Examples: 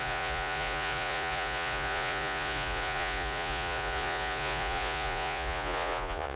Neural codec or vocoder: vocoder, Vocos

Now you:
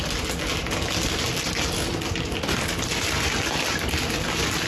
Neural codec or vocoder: none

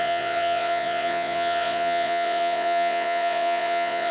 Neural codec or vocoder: vocoder, Vocos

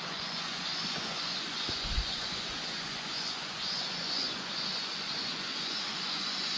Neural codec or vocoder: vocoder, Vocos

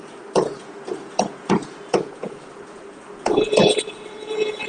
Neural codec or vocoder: vocoder, Vocos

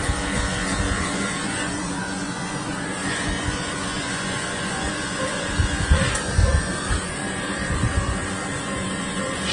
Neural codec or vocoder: vocoder, Vocos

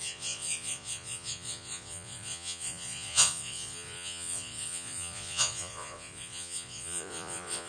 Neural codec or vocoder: vocoder, Vocos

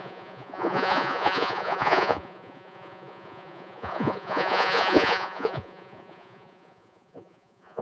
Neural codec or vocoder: vocoder, Vocos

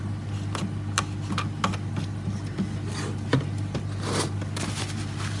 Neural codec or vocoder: none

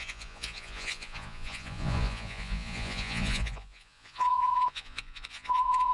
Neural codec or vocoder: vocoder, Vocos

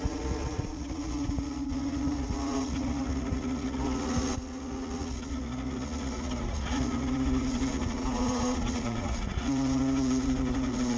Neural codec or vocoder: vocoder, Vocos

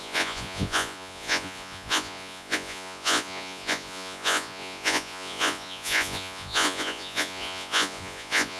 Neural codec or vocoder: vocoder, Vocos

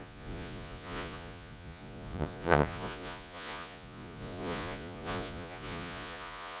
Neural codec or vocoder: vocoder, Vocos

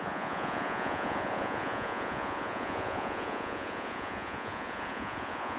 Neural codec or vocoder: vocoder, Vocos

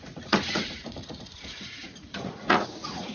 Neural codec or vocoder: vocoder, Vocos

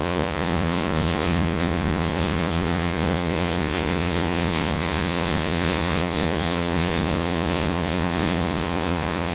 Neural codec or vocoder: vocoder, Vocos